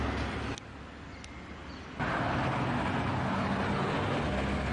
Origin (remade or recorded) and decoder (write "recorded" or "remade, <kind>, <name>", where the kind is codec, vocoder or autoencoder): recorded